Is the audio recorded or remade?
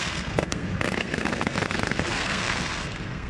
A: remade